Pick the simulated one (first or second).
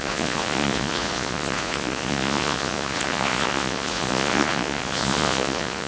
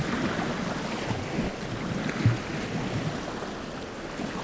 first